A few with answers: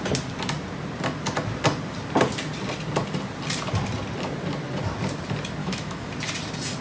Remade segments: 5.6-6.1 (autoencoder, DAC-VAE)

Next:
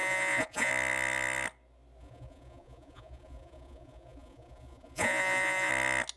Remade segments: 0.0-0.7 (vocoder, Vocos); 2.0-5.7

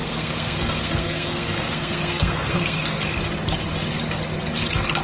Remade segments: 0.0-3.0 (codec, SNAC)

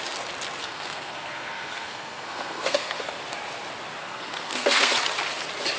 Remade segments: 0.6-3.1 (codec, SNAC); 4.0-4.9

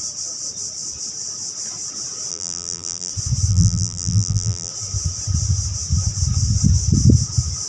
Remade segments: 2.3-3.1 (vocoder, BigVGAN v2); 3.5-4.7

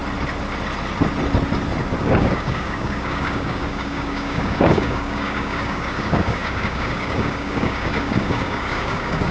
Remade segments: 2.0-9.3 (codec, DAC)